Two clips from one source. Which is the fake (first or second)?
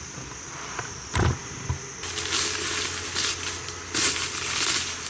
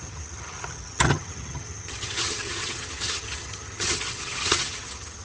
second